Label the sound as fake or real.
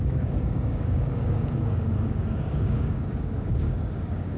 fake